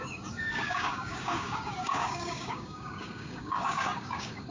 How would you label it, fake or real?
fake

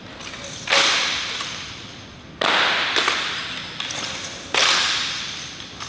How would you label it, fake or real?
real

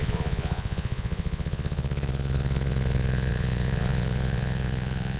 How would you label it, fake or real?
fake